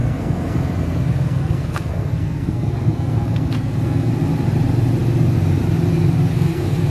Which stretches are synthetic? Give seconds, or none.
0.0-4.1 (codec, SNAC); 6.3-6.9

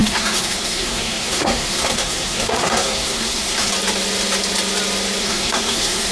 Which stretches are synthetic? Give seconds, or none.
0.0-3.7 (codec, SNAC); 5.2-6.1